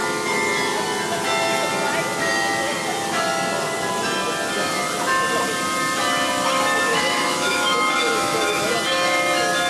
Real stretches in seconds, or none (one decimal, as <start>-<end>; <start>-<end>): 0.0-6.9; 8.7-9.7